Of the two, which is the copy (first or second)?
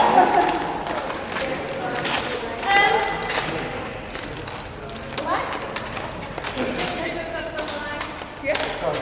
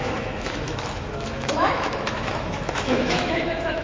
second